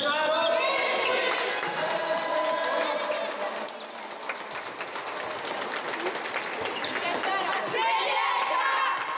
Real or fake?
real